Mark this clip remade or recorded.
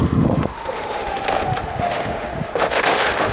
remade